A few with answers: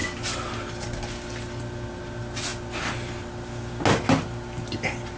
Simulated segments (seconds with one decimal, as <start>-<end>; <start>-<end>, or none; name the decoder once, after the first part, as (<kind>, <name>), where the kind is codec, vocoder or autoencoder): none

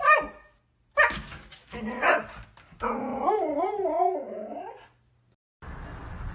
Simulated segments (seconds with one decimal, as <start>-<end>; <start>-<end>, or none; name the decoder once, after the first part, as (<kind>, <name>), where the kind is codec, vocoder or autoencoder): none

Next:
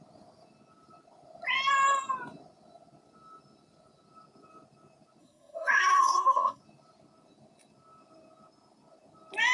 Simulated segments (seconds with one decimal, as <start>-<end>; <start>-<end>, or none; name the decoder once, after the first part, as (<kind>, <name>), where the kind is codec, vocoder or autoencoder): 5.2-6.6 (codec, SNAC)

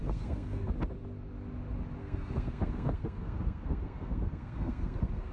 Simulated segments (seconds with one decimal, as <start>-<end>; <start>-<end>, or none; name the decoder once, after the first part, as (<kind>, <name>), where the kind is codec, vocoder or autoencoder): 0.0-0.7 (codec, SNAC); 2.0-5.3

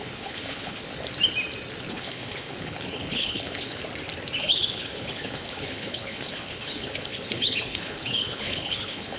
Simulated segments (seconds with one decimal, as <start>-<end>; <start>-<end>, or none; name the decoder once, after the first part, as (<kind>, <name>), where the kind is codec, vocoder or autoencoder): 0.0-0.8 (codec, HILCodec); 1.9-3.8; 4.4-9.2